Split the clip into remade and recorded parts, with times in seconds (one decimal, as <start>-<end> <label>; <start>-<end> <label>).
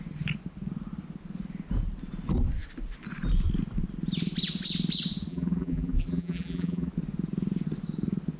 0.0-5.3 recorded; 5.3-6.9 remade; 6.9-8.4 recorded